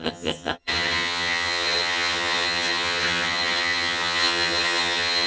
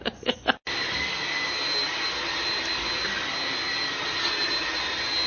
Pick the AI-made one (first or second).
first